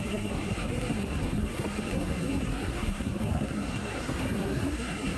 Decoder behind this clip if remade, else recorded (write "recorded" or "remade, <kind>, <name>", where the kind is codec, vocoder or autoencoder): remade, codec, SNAC